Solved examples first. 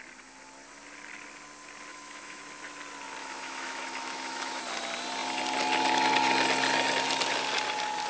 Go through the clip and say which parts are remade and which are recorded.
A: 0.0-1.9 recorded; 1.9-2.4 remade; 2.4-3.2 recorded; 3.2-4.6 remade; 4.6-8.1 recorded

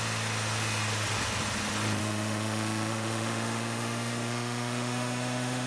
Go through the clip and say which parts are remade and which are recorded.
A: 0.0-2.0 recorded; 2.0-5.7 remade

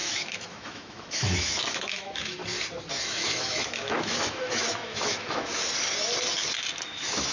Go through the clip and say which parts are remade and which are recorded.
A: 0.0-2.4 remade; 2.4-2.9 recorded; 2.9-5.6 remade; 5.6-6.8 recorded; 6.8-7.3 remade

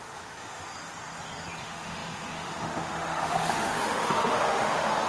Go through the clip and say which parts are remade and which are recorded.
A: 0.0-0.7 remade; 0.7-1.6 recorded; 1.6-5.1 remade

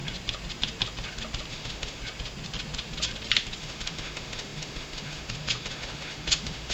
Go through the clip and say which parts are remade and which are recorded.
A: 0.0-1.5 recorded; 1.5-2.0 remade; 2.0-3.6 recorded; 3.6-6.7 remade

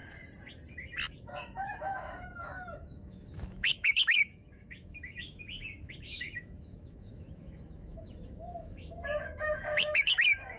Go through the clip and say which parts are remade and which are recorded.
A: 0.0-1.2 recorded; 1.2-10.6 remade

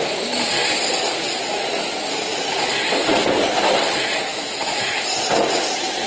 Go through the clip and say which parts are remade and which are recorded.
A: 0.0-4.3 recorded; 4.3-5.0 remade; 5.0-6.1 recorded

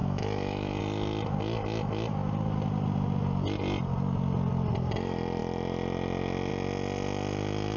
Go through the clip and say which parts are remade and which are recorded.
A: 0.0-0.8 remade; 0.8-7.8 recorded